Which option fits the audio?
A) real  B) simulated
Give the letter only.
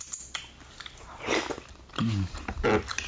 A